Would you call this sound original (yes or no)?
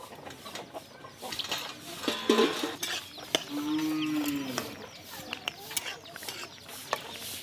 yes